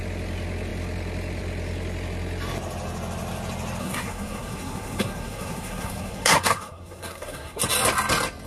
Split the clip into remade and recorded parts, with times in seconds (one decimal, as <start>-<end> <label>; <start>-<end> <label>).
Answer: 0.0-3.8 recorded; 3.8-7.6 remade; 7.6-8.5 recorded